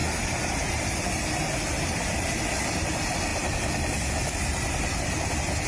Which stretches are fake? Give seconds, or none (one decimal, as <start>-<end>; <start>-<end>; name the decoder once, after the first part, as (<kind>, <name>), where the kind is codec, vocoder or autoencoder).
0.0-1.0 (vocoder, BigVGAN v2)